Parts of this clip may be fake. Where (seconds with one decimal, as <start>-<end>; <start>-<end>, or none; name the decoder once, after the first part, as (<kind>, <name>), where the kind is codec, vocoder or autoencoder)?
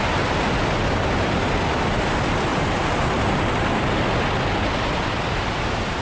2.5-3.9 (vocoder, BigVGAN v2)